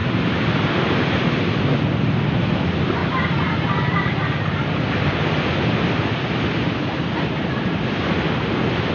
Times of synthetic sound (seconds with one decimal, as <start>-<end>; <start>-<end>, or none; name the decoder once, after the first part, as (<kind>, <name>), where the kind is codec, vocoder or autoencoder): 0.0-1.6 (vocoder, BigVGAN v2)